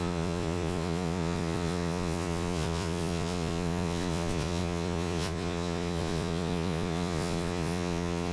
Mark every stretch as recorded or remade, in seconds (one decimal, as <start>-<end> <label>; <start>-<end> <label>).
0.0-8.3 remade

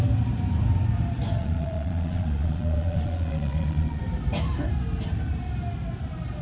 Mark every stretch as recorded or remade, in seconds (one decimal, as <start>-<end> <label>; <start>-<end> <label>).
0.0-1.4 recorded; 1.4-4.0 remade; 4.0-6.4 recorded